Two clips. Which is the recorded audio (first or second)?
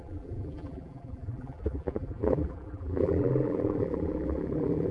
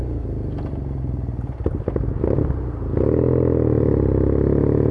second